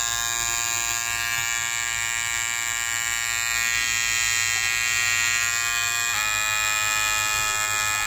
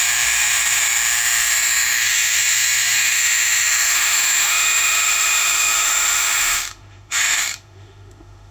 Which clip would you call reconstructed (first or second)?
second